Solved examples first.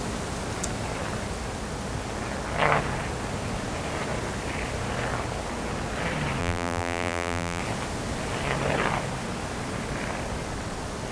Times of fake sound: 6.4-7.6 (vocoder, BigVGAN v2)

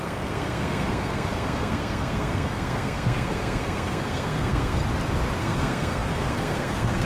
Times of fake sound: 0.0-4.8 (codec, SNAC); 5.4-7.1

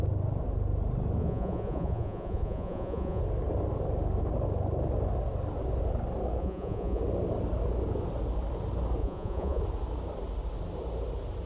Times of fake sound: 1.2-3.2 (vocoder, Vocos); 6.4-7.0; 9.0-9.6

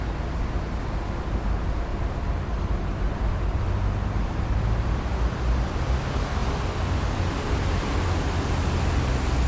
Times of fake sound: 1.9-5.4 (vocoder, BigVGAN v2)

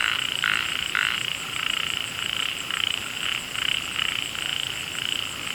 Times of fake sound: 0.0-3.0 (vocoder, BigVGAN v2)

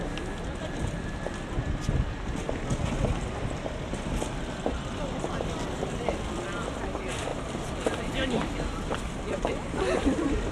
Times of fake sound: none

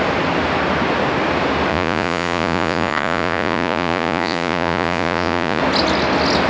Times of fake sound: 1.7-5.6 (vocoder, Vocos)